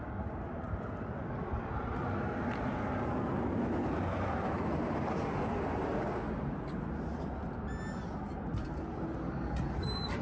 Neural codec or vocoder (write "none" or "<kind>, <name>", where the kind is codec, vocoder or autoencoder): none